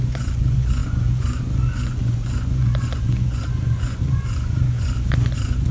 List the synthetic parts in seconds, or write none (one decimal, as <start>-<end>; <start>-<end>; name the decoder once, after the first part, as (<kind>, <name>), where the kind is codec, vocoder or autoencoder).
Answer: 0.0-5.7 (vocoder, Vocos)